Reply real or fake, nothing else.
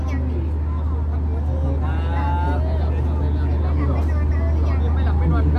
real